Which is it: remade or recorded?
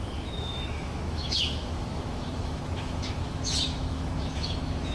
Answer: remade